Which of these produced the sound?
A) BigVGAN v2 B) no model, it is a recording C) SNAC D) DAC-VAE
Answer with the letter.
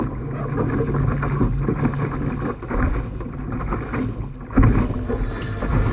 B